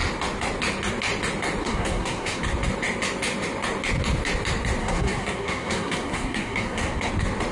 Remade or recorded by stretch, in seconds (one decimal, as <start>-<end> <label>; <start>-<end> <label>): 0.0-1.6 recorded; 1.6-2.4 remade; 2.4-4.8 recorded; 4.8-7.1 remade; 7.1-7.5 recorded

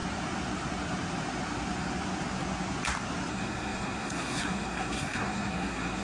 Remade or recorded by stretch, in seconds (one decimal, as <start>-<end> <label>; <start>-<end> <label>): 0.0-3.3 recorded; 3.3-6.0 remade

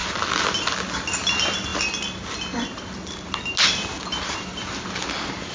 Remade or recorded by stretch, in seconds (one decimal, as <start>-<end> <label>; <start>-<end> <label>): 0.0-5.5 recorded